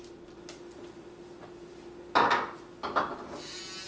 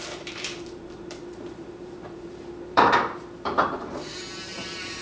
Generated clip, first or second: second